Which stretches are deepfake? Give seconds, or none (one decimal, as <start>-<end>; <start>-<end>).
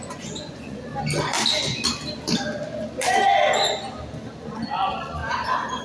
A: 0.0-0.9; 4.4-5.2